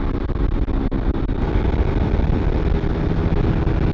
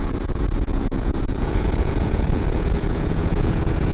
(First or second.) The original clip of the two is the first